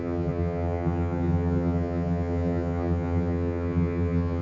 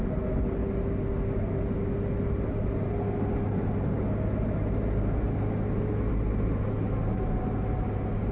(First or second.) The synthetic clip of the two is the first